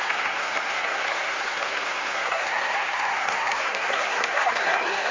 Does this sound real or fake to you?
fake